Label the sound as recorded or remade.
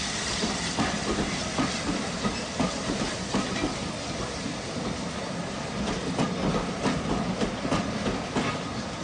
recorded